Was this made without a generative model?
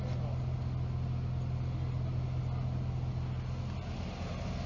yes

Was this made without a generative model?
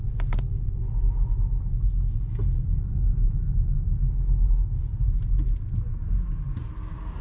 yes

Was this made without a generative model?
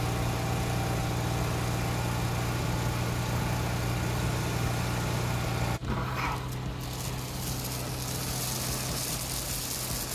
yes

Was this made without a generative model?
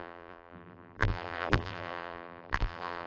no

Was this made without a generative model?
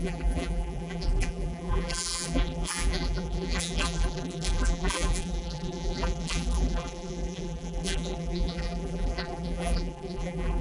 no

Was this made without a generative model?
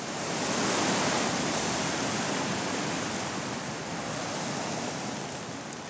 yes